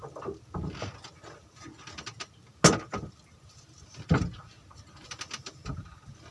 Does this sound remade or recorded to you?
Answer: recorded